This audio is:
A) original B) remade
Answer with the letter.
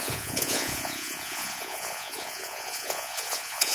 B